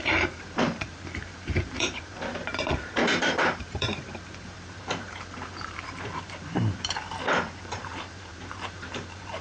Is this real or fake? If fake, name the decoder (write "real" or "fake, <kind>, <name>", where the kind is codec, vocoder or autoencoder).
fake, vocoder, BigVGAN v2